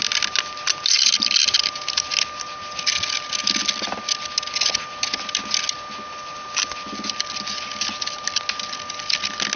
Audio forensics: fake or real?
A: real